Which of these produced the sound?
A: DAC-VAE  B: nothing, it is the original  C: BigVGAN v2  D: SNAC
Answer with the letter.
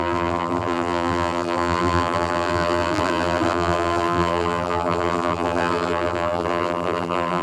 C